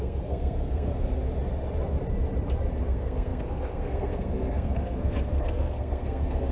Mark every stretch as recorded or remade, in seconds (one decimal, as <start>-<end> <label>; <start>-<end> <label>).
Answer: 0.0-0.9 remade; 0.9-2.9 recorded; 2.9-6.5 remade